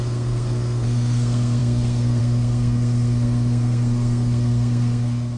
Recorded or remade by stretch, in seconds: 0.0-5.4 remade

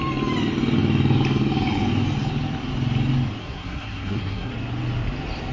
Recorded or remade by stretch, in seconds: 0.0-3.4 recorded; 3.4-4.5 remade; 4.5-5.5 recorded

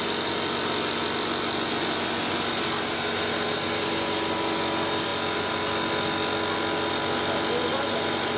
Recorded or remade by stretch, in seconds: 0.0-8.4 recorded

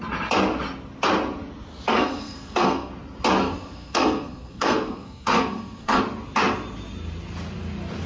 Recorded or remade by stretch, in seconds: 0.0-1.9 recorded; 1.9-2.9 remade; 2.9-3.4 recorded; 3.4-6.0 remade; 6.0-8.1 recorded

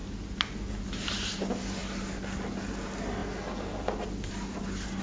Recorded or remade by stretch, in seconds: 0.0-5.0 recorded

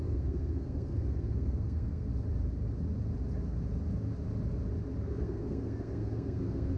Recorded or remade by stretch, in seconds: 0.0-2.1 remade; 2.1-5.0 recorded; 5.0-6.8 remade

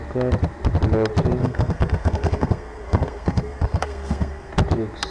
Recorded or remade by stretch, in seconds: 0.0-1.4 recorded; 1.4-4.5 remade; 4.5-5.1 recorded